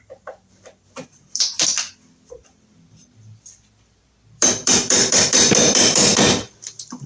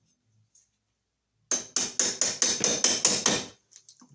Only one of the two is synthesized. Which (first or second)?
first